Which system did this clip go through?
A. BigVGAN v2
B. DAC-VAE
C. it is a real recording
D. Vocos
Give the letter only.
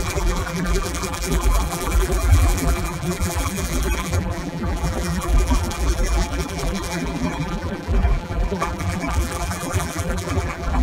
A